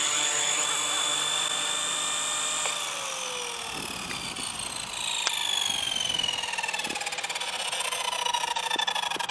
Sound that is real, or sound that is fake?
real